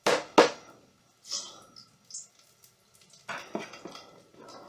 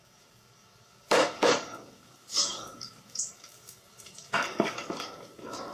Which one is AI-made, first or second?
second